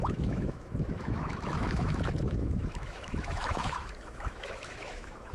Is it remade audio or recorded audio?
remade